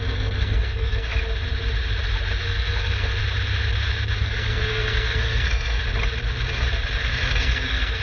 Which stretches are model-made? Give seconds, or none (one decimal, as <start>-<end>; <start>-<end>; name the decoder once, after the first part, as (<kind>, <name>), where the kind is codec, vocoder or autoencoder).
0.0-1.1 (codec, SNAC); 2.4-3.2; 4.2-5.8; 7.0-8.0